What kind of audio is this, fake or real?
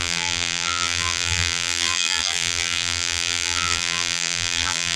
fake